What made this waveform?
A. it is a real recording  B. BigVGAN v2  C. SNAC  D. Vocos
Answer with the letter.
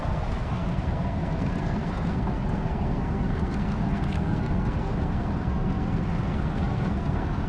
C